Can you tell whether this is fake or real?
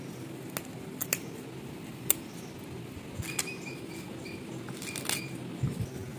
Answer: real